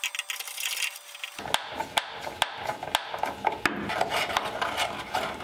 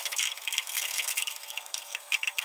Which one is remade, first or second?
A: second